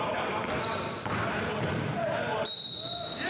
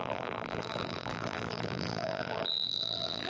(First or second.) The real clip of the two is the first